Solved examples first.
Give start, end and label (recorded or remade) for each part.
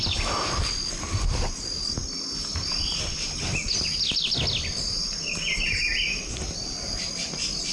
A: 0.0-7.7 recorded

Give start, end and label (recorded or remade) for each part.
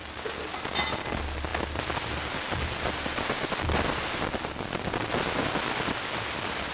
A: 0.0-6.7 recorded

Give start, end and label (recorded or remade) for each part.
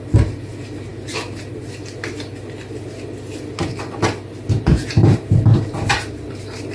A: 0.0-6.7 recorded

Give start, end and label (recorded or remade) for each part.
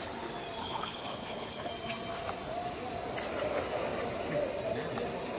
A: 0.0-0.6 recorded; 0.6-1.7 remade; 1.7-5.4 recorded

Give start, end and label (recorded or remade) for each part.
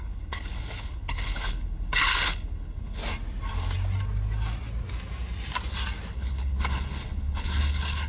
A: 0.0-3.0 remade; 3.0-6.1 recorded; 6.1-8.1 remade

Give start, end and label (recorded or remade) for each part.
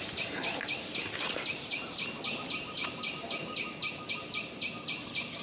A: 0.0-5.4 recorded